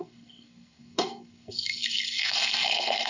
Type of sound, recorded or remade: remade